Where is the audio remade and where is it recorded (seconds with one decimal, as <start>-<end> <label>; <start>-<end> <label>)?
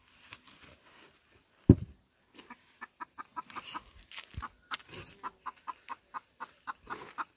0.0-7.4 recorded